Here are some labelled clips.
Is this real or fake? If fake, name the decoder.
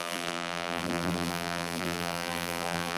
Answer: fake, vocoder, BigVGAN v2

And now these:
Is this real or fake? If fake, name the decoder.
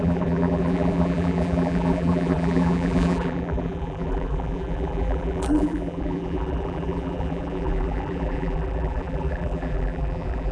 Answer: fake, vocoder, BigVGAN v2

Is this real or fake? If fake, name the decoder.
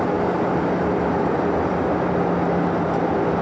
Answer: real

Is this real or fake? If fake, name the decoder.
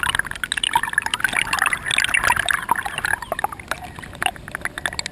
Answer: real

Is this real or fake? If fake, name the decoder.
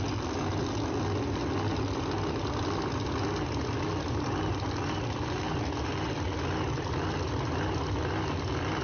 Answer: real